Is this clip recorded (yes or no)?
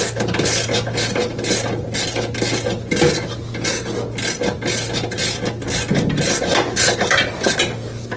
yes